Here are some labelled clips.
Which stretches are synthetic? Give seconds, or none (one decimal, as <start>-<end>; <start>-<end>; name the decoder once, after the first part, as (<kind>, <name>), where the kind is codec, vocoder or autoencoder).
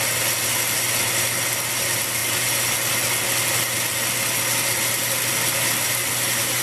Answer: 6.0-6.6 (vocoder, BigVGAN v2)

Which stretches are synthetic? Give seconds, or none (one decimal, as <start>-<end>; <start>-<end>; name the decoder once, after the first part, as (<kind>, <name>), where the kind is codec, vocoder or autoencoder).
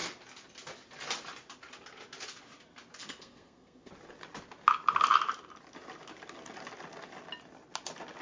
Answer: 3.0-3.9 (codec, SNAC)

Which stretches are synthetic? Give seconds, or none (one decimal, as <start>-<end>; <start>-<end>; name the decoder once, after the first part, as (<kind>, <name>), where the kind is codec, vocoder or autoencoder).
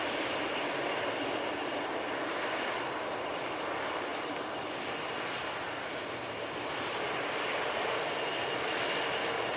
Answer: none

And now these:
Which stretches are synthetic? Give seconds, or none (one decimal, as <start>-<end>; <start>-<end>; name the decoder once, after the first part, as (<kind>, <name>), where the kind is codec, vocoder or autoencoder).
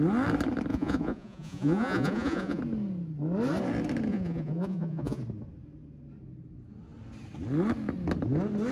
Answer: 0.7-2.6 (vocoder, Vocos); 4.1-5.2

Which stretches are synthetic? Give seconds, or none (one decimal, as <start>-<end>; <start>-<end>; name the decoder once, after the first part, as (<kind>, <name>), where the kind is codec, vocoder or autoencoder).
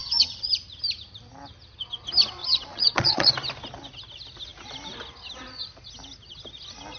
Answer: 0.0-0.5 (vocoder, Vocos); 2.4-3.3